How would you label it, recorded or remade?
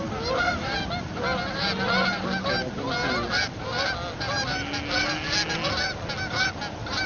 recorded